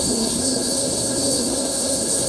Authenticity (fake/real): fake